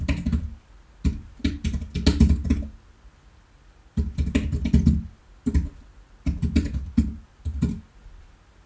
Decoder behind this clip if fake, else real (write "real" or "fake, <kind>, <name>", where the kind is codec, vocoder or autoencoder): real